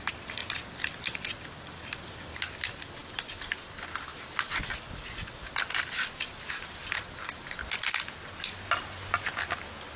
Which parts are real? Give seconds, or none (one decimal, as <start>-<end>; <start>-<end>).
0.0-10.0